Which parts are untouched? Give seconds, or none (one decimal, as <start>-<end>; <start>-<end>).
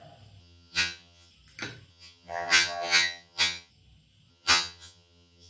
0.0-0.4; 1.3-1.9; 3.7-4.3